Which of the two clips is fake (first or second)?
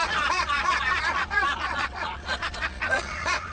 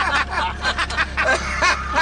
first